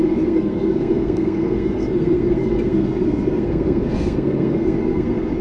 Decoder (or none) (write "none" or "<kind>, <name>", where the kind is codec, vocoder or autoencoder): codec, SNAC